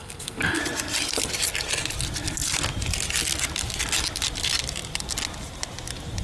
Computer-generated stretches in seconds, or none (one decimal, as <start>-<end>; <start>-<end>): 0.0-0.6